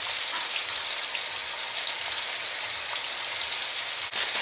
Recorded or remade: recorded